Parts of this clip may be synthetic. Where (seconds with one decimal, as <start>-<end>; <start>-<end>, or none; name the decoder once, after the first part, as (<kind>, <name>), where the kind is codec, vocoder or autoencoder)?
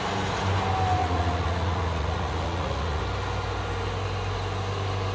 1.0-3.0 (vocoder, Vocos)